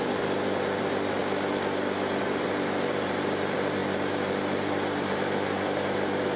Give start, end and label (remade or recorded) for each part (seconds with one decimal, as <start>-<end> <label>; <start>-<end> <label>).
0.0-1.2 remade; 1.2-2.2 recorded; 2.2-6.4 remade